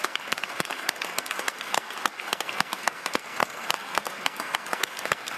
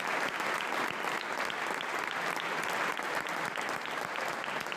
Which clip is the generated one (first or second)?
first